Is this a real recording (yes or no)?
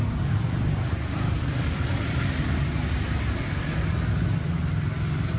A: yes